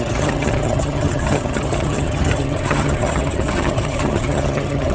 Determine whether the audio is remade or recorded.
remade